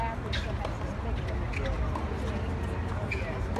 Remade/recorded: recorded